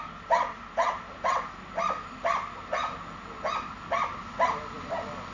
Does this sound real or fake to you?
real